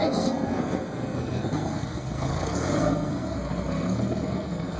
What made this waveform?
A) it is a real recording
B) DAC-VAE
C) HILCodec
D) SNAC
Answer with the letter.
D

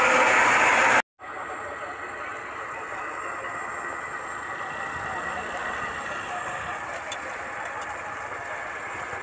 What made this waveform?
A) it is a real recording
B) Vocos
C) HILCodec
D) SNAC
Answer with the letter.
A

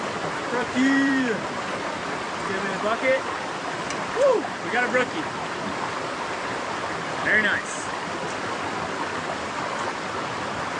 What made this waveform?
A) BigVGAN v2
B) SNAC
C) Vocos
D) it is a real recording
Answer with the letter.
A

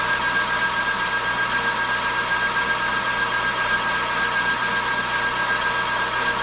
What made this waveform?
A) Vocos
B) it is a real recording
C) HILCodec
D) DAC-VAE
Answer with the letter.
B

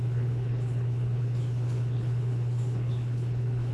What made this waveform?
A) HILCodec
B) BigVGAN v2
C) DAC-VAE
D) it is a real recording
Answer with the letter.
A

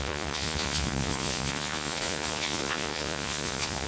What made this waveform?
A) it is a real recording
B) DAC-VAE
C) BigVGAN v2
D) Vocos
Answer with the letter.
D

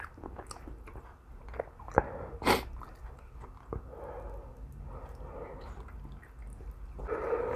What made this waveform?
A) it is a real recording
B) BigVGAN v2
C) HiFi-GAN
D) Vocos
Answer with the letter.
A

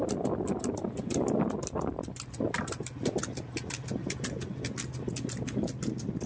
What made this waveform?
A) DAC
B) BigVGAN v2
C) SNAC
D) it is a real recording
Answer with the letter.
D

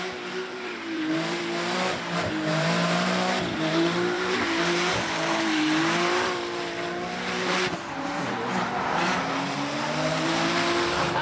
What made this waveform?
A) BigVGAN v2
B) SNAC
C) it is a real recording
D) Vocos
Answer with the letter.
A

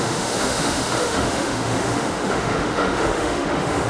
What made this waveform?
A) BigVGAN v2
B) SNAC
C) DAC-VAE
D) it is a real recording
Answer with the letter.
C